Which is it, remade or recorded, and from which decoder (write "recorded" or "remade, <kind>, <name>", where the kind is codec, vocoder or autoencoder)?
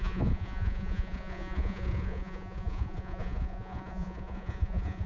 remade, vocoder, Vocos